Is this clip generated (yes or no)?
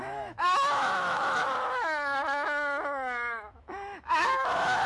yes